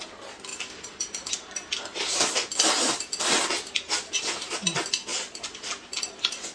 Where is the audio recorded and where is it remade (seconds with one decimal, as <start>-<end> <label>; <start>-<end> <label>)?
0.0-5.1 recorded; 5.1-5.7 remade; 5.7-6.5 recorded